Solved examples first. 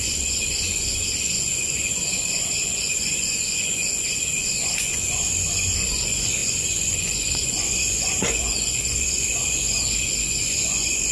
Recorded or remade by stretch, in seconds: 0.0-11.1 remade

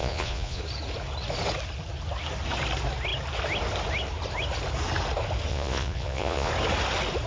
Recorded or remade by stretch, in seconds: 0.0-0.6 remade; 0.6-5.5 recorded; 5.5-6.5 remade; 6.5-7.3 recorded

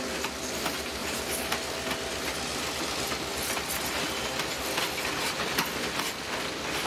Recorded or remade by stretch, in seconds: 0.0-6.9 recorded